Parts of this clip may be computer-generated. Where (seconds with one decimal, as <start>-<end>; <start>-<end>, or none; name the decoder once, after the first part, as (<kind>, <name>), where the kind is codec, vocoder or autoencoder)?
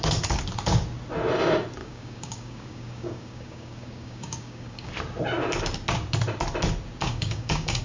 1.8-4.9 (codec, DAC); 7.0-7.8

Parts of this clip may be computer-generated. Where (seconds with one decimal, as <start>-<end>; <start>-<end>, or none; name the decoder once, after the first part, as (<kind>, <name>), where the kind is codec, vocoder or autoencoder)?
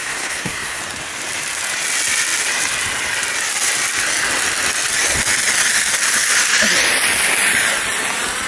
0.0-0.8 (codec, SNAC)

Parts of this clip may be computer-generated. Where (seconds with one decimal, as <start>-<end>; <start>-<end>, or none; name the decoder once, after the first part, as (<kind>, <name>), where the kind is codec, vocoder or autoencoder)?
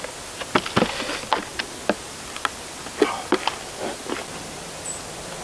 none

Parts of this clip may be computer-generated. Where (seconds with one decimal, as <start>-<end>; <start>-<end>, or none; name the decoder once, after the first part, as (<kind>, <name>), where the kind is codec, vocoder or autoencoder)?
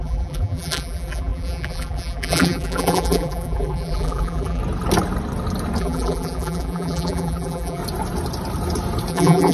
0.0-4.6 (vocoder, BigVGAN v2); 5.8-7.8; 9.1-9.5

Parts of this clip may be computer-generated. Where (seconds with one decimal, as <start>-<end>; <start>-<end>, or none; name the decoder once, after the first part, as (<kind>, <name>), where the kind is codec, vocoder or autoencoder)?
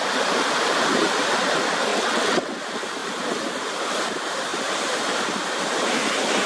1.9-2.6 (vocoder, WaveNeXt)